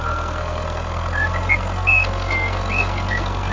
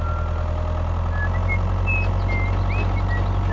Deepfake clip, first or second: first